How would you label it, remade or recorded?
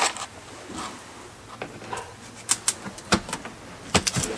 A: recorded